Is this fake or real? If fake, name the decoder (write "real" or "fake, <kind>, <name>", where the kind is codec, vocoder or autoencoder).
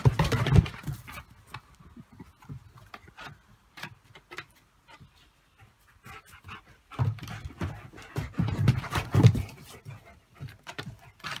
real